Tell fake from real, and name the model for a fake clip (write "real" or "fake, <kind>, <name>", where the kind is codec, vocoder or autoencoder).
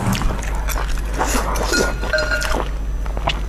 real